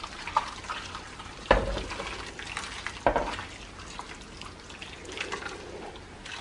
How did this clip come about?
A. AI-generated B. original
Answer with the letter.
B